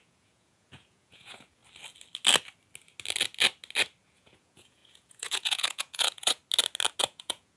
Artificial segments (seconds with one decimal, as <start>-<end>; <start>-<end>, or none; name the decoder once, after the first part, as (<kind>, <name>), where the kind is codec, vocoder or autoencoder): 0.0-1.6 (vocoder, Vocos); 4.0-6.4; 7.0-7.6